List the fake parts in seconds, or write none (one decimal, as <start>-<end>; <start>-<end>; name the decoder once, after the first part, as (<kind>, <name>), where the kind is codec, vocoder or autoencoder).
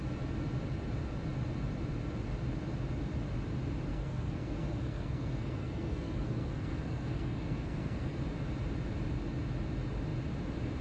3.9-8.2 (codec, SNAC)